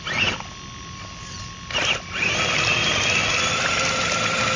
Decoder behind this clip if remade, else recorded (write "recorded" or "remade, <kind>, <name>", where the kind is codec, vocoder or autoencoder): recorded